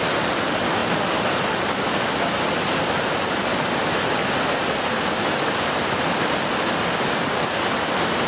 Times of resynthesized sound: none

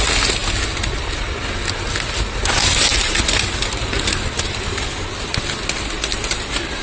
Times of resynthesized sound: none

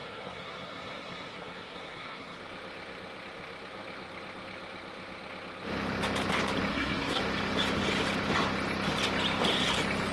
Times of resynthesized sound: 0.0-2.4 (codec, SNAC); 6.7-7.2